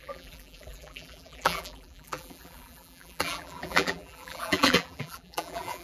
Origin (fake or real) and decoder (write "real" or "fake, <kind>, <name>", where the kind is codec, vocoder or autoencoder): fake, vocoder, BigVGAN v2